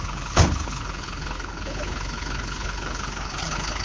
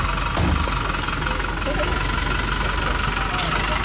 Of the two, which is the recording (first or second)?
second